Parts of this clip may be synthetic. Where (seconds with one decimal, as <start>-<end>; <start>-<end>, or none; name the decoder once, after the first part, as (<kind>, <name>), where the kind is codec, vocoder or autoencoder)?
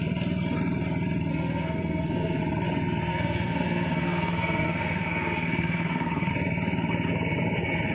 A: 1.3-2.4 (codec, SNAC); 3.1-6.3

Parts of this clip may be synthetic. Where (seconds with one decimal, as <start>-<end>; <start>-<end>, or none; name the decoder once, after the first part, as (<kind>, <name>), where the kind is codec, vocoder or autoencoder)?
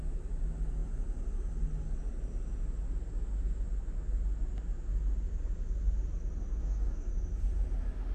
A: 6.6-7.1 (codec, DAC)